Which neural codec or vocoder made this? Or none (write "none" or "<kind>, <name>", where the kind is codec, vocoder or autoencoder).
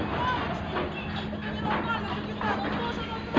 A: none